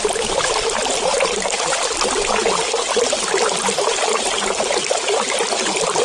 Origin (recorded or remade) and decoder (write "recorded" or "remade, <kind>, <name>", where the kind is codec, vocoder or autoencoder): recorded